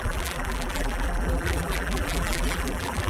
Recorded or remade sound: remade